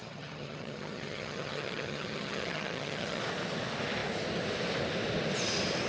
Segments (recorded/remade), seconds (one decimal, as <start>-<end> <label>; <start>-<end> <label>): 0.0-3.2 remade; 3.2-5.9 recorded